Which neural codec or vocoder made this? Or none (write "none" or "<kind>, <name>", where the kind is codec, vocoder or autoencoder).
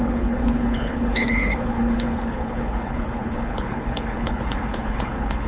codec, HILCodec